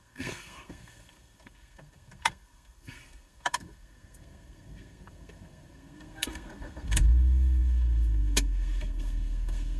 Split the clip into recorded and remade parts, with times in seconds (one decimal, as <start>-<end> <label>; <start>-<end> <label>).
0.0-9.8 remade